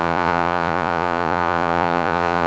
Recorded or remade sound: remade